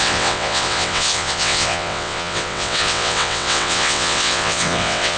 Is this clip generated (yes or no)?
yes